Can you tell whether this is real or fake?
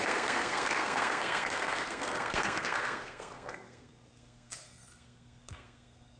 fake